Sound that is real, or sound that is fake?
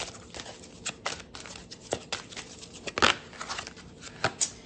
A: real